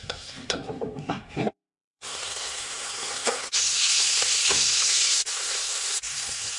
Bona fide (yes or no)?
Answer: no